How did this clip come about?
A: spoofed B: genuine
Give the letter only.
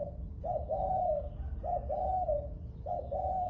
A